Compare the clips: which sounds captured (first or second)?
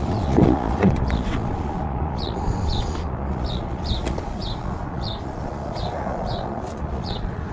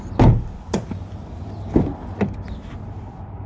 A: second